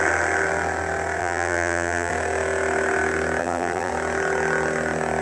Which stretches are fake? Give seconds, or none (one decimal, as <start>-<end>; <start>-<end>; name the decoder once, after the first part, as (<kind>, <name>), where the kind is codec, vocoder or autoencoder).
1.2-2.1 (vocoder, BigVGAN v2); 3.4-3.9